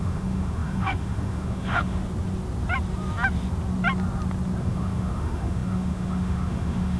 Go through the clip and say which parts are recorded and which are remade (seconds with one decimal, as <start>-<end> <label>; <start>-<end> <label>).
0.0-2.0 remade; 2.0-4.6 recorded; 4.6-7.0 remade